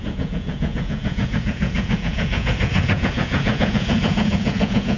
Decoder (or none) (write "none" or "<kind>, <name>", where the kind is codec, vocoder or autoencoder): vocoder, Vocos